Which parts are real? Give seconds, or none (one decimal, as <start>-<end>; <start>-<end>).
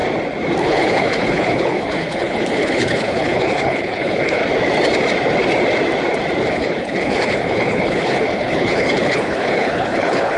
0.0-0.6; 4.4-6.5